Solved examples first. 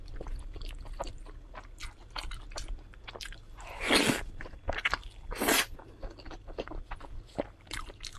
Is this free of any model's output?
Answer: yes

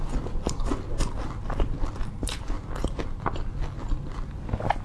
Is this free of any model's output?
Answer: yes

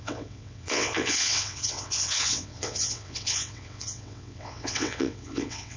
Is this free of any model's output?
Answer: no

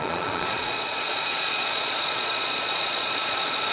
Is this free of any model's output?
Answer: no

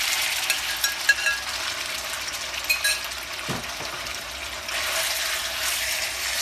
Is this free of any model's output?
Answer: yes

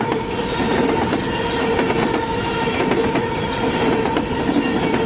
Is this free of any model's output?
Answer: yes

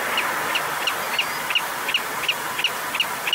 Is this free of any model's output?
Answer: yes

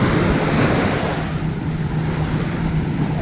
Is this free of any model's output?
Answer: yes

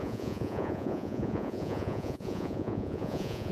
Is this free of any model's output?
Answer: no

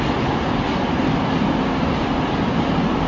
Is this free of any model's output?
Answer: yes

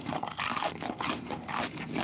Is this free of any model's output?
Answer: yes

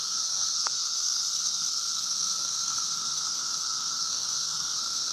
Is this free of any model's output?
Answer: no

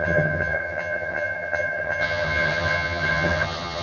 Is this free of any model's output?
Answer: no